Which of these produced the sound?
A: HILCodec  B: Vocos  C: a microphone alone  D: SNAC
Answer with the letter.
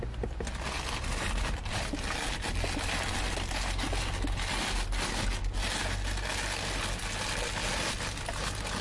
C